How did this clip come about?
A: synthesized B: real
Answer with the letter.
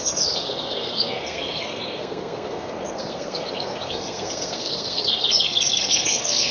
A